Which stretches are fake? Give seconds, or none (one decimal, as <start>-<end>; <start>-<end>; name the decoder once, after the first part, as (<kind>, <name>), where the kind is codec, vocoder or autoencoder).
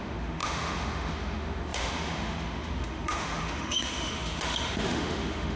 0.0-5.6 (autoencoder, DAC-VAE)